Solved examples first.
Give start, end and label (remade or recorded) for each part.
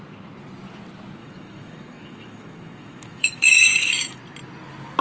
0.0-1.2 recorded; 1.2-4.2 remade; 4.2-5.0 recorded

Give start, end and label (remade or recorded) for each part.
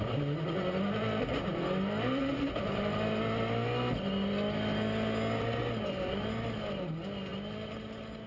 0.0-8.3 recorded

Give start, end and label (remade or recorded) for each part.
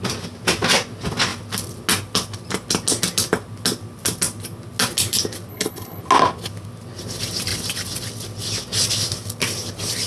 0.0-5.5 recorded; 5.5-6.0 remade; 6.0-10.1 recorded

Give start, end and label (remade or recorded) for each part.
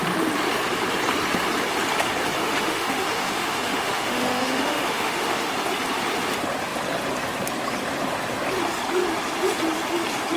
0.0-2.4 recorded; 2.4-5.5 remade; 5.5-10.4 recorded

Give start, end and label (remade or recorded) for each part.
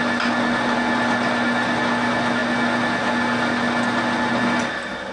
0.0-5.1 recorded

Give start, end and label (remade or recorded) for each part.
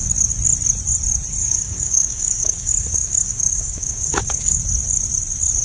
0.0-1.4 recorded; 1.4-4.6 remade; 4.6-5.6 recorded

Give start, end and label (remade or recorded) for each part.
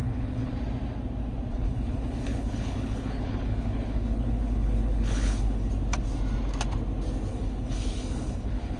0.0-0.5 remade; 0.5-1.5 recorded; 1.5-5.7 remade; 5.7-7.3 recorded; 7.3-8.8 remade